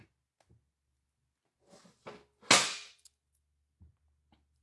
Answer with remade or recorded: recorded